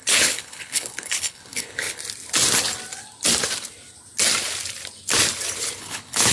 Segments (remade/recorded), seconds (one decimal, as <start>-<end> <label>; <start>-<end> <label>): 0.0-2.0 remade; 2.0-5.8 recorded; 5.8-6.3 remade